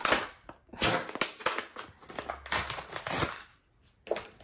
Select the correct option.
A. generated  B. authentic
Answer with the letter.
B